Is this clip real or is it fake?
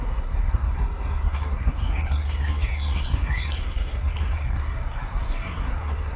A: fake